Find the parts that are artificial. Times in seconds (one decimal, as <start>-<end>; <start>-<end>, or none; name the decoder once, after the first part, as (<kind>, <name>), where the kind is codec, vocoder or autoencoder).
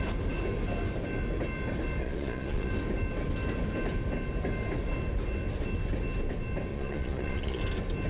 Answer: 2.0-2.7 (vocoder, Vocos); 6.7-7.6